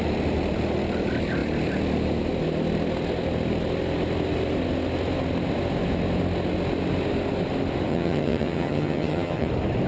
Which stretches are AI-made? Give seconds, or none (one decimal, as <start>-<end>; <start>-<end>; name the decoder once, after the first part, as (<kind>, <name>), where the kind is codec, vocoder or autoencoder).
7.9-9.5 (vocoder, HiFi-GAN)